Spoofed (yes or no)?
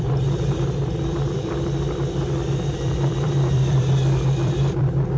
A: yes